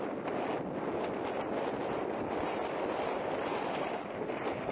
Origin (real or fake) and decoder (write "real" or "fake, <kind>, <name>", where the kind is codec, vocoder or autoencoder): real